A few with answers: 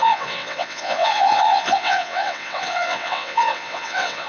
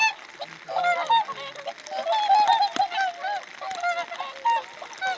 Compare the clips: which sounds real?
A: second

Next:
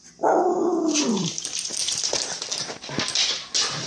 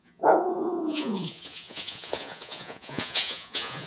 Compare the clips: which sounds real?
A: first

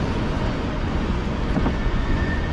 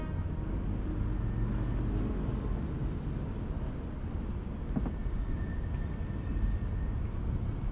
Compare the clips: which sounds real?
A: second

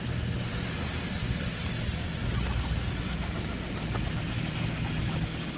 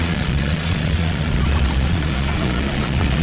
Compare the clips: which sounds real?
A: first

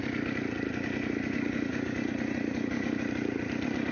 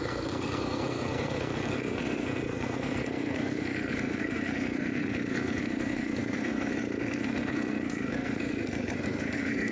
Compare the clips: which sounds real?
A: first